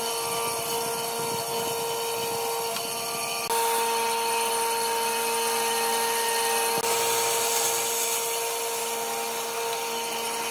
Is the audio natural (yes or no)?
yes